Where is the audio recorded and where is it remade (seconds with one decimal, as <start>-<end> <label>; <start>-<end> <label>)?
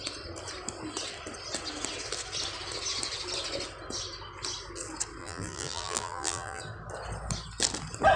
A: 0.0-5.2 recorded; 5.2-6.6 remade; 6.6-8.2 recorded